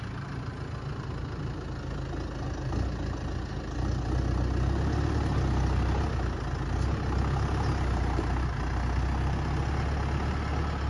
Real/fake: real